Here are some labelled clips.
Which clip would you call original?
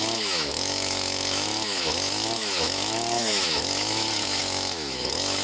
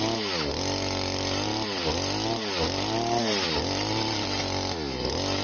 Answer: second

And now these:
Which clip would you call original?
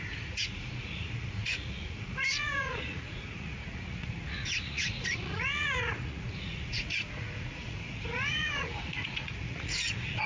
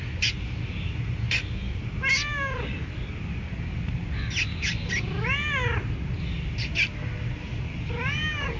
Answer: second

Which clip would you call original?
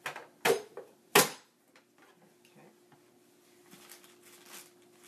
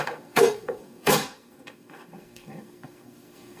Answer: first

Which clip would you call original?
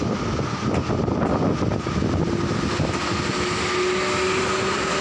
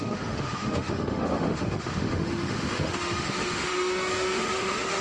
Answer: first